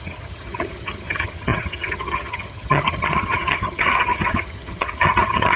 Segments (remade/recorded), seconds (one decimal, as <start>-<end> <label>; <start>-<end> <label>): 0.0-5.6 remade